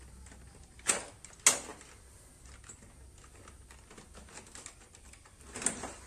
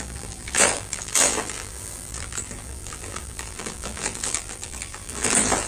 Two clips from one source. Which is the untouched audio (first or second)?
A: first